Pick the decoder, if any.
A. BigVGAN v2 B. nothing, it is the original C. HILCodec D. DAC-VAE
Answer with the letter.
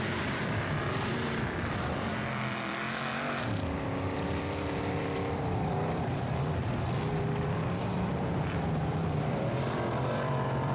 A